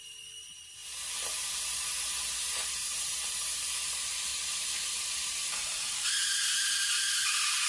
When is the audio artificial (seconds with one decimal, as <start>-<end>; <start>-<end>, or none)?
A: 0.0-7.7